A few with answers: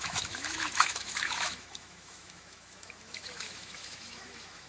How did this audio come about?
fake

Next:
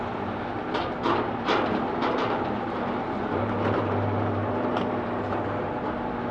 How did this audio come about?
fake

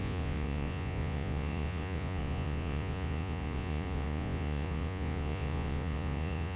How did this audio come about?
fake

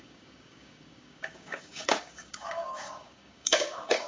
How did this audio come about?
fake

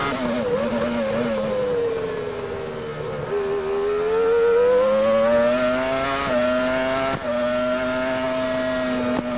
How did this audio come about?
real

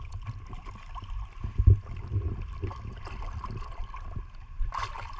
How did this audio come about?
real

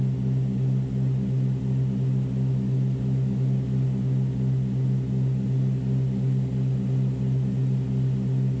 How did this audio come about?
real